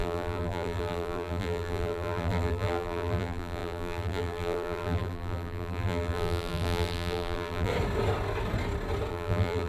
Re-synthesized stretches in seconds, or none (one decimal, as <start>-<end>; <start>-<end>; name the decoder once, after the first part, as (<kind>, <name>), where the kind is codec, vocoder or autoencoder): 0.0-7.7 (vocoder, BigVGAN v2); 9.1-9.7

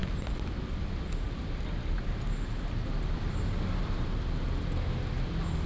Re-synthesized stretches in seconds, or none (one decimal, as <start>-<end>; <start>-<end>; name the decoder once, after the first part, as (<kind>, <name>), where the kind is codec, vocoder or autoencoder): none